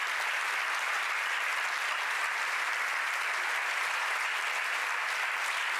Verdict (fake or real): real